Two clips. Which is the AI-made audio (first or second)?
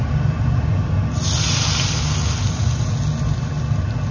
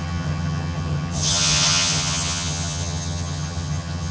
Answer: second